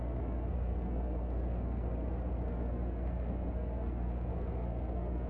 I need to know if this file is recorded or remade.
remade